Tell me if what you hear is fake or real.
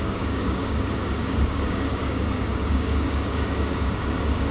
fake